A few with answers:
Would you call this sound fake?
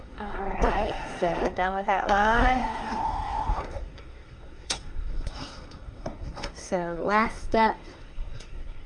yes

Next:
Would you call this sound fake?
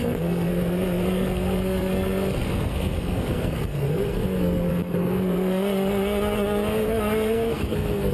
yes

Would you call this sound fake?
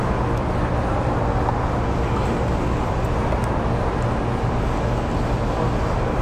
no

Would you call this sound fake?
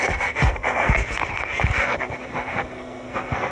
yes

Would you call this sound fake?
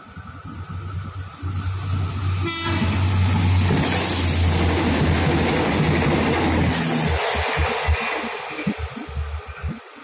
no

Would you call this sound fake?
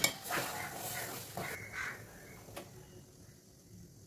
no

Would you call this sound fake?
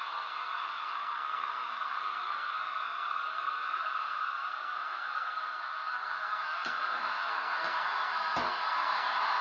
yes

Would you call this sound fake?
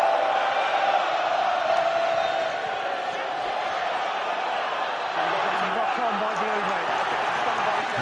no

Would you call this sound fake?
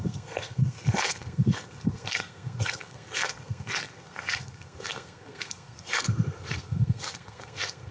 yes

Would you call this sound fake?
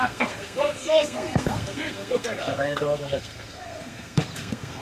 yes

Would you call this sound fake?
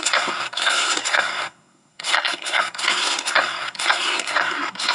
yes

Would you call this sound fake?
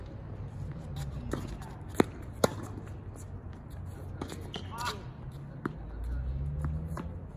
no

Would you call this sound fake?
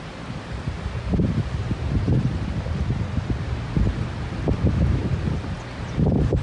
no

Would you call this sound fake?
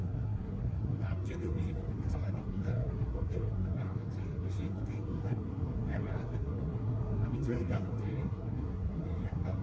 yes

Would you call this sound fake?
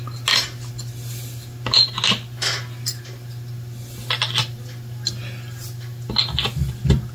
no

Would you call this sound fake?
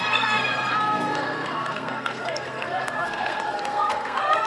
yes